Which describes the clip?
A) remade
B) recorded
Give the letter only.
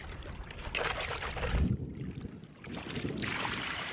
A